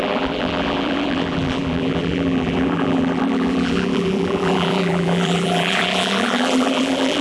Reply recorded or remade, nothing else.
remade